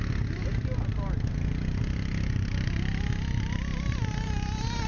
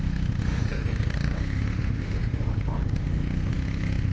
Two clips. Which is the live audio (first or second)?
first